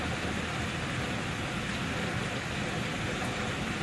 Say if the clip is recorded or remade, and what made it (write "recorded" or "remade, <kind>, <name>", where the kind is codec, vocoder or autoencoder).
recorded